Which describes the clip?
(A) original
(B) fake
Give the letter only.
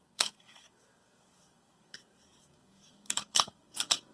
B